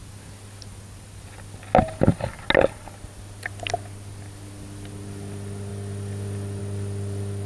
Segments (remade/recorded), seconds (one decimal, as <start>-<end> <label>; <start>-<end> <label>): 0.0-7.5 recorded